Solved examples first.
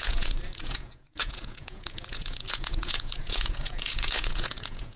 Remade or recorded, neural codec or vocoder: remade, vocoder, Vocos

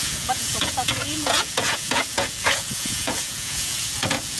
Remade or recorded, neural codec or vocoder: remade, vocoder, Vocos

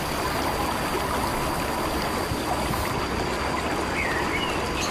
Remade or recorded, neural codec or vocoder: recorded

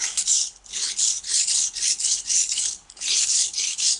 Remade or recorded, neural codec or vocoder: remade, codec, HILCodec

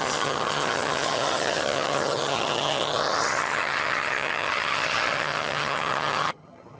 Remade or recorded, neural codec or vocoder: remade, vocoder, HiFi-GAN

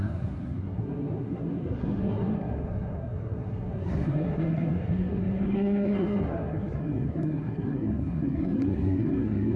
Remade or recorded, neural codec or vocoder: remade, codec, SNAC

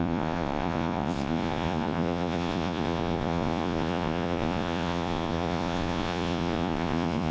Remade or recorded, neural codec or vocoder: remade, vocoder, Vocos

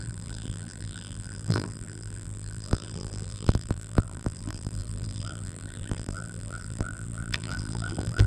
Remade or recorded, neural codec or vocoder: remade, vocoder, BigVGAN v2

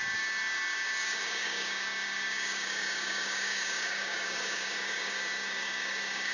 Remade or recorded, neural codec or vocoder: remade, codec, DAC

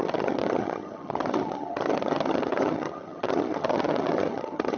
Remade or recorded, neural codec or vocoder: remade, vocoder, HiFi-GAN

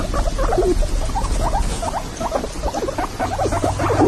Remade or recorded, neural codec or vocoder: recorded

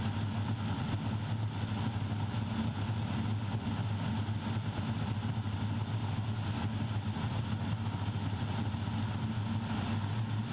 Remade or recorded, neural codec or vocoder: recorded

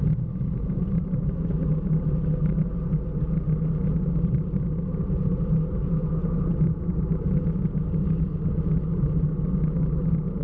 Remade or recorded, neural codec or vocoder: recorded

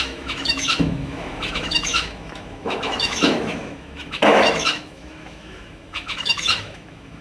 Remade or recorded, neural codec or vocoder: remade, autoencoder, DAC-VAE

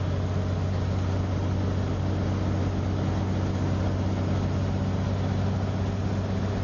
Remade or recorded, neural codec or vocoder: recorded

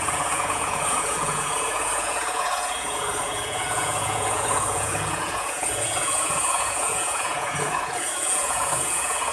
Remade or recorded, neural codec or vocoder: remade, vocoder, Vocos